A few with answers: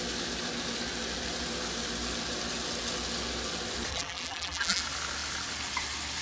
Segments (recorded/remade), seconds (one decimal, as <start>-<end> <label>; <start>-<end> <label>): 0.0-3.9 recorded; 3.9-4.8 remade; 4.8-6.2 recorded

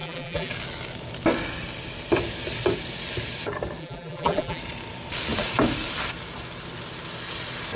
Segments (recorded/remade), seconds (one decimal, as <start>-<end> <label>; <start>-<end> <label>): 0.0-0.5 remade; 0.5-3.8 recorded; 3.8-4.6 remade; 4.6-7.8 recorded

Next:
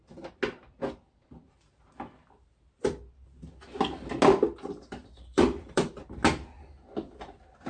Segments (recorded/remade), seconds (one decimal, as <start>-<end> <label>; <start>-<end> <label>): 0.0-5.0 recorded; 5.0-6.0 remade; 6.0-7.7 recorded

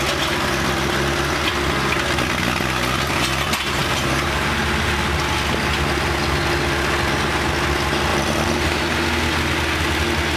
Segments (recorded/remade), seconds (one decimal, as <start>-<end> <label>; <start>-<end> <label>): 0.0-3.8 recorded; 3.8-4.6 remade; 4.6-8.1 recorded; 8.1-8.8 remade; 8.8-10.4 recorded